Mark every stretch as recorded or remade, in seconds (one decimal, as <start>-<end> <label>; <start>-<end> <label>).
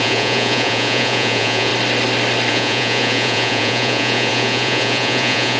0.0-1.7 remade; 1.7-2.5 recorded; 2.5-5.6 remade